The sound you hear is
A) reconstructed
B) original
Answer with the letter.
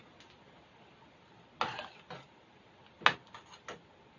B